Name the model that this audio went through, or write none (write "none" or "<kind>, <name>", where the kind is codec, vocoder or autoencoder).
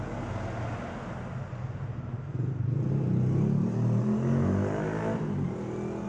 none